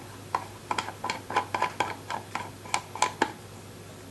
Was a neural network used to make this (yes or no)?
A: no